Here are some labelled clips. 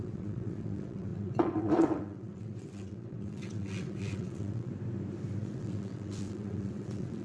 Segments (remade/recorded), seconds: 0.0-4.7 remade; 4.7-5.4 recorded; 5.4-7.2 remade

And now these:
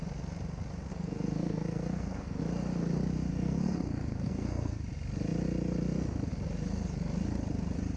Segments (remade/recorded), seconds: 0.0-0.9 recorded; 0.9-2.4 remade; 2.4-3.3 recorded; 3.3-4.8 remade; 4.8-8.0 recorded

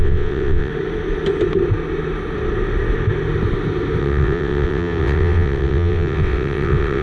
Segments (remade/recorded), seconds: 0.0-0.7 remade; 0.7-4.0 recorded; 4.0-7.0 remade

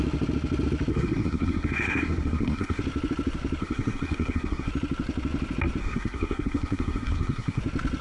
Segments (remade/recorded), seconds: 0.0-0.9 recorded; 0.9-2.8 remade; 2.8-3.6 recorded; 3.6-4.7 remade; 4.7-5.8 recorded; 5.8-7.6 remade; 7.6-8.0 recorded

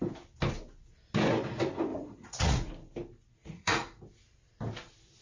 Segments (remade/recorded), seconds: 0.0-1.9 recorded; 1.9-2.7 remade; 2.7-3.4 recorded; 3.4-4.1 remade; 4.1-5.2 recorded